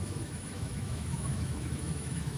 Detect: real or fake fake